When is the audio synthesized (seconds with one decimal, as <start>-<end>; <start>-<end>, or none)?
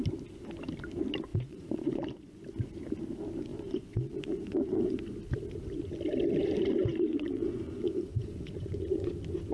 1.3-2.3; 3.5-5.0; 6.8-9.1